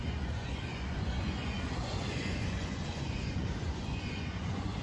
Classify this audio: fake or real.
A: fake